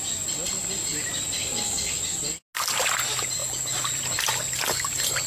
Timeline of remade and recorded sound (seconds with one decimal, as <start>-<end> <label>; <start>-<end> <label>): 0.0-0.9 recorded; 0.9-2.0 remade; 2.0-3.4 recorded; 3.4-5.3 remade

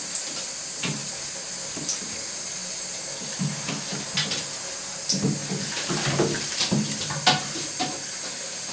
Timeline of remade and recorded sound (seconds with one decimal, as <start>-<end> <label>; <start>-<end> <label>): 0.0-1.0 recorded; 1.0-1.5 remade; 1.5-8.7 recorded

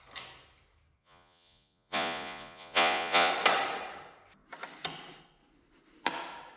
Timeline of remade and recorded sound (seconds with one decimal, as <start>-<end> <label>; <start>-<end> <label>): 0.0-1.0 recorded; 1.0-3.3 remade; 3.3-6.6 recorded

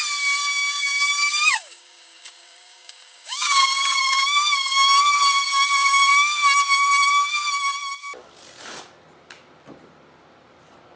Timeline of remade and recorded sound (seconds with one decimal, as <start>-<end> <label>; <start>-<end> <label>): 0.0-0.4 recorded; 0.4-5.0 remade; 5.0-11.0 recorded

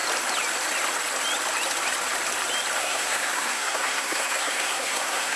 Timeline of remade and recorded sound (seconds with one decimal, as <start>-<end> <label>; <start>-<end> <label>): 0.0-2.8 recorded; 2.8-5.4 remade